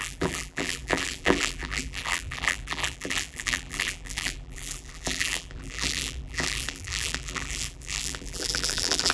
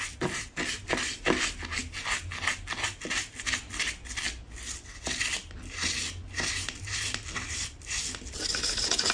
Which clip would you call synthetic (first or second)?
first